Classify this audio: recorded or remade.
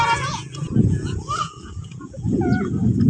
remade